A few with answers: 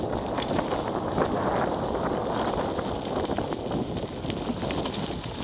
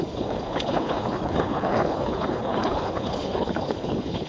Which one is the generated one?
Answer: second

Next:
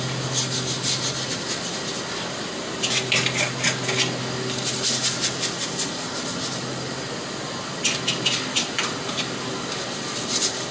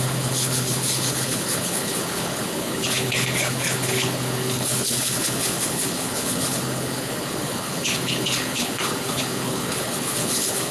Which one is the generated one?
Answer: second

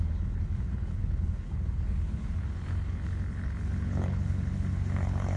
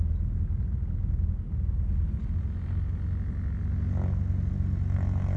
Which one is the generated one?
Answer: first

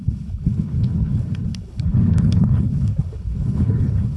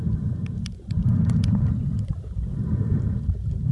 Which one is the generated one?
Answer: first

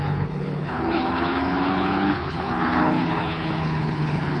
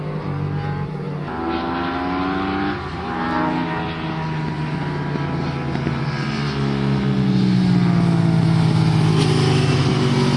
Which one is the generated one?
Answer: first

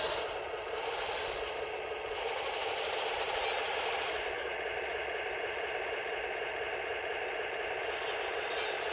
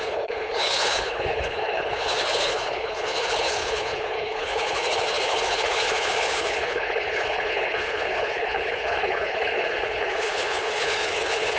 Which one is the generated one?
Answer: second